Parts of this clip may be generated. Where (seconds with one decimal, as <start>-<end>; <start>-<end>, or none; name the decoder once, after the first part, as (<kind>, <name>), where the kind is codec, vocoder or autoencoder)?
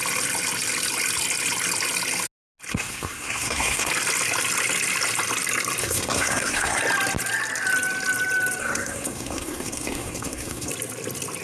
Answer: 2.7-3.9 (codec, SNAC); 5.8-6.8; 8.6-10.7